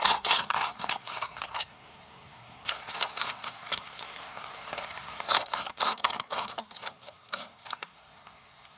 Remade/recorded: remade